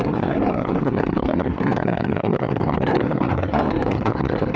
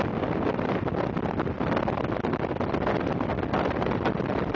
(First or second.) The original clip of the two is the second